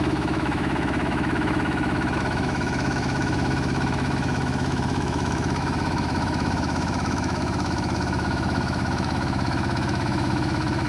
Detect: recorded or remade remade